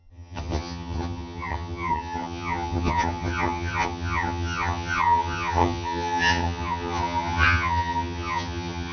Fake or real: fake